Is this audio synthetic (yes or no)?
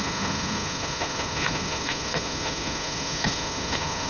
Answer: yes